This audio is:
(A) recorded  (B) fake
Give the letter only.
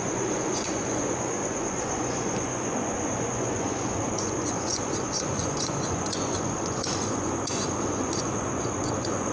B